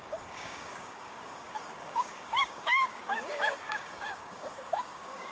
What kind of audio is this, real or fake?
fake